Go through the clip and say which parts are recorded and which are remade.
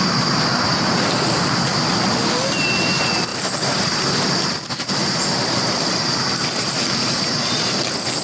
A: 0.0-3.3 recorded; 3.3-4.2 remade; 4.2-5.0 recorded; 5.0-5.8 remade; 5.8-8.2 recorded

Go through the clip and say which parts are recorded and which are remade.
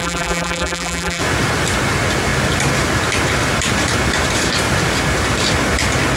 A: 0.0-1.2 remade; 1.2-6.2 recorded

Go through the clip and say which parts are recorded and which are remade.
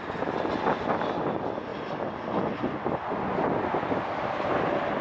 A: 0.0-5.0 recorded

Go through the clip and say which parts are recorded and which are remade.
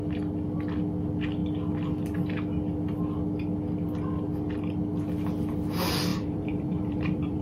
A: 0.0-6.1 recorded; 6.1-7.4 remade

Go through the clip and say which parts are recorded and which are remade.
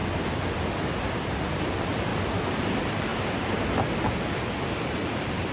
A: 0.0-0.5 recorded; 0.5-2.1 remade; 2.1-2.6 recorded; 2.6-3.1 remade; 3.1-4.5 recorded; 4.5-5.5 remade